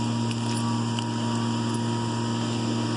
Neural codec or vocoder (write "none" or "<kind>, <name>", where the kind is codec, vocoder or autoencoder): none